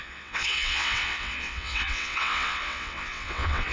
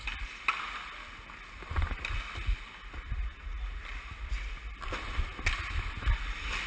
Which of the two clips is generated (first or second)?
first